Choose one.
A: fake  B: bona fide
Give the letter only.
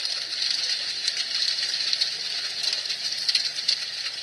B